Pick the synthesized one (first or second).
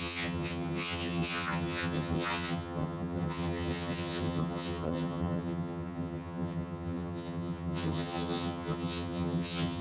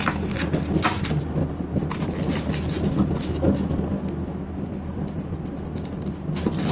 first